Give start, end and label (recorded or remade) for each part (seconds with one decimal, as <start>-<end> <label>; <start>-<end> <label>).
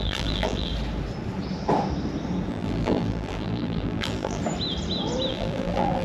0.0-0.7 remade; 0.7-2.5 recorded; 2.5-4.4 remade; 4.4-5.3 recorded; 5.3-6.0 remade